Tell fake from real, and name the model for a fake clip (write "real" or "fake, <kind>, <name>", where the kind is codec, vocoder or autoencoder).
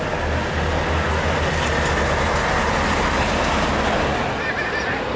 real